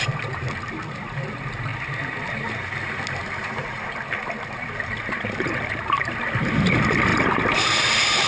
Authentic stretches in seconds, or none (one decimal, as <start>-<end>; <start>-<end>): 0.0-7.1; 7.9-8.3